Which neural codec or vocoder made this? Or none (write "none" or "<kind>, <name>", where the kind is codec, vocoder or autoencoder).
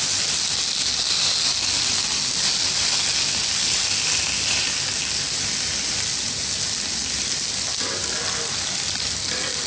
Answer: none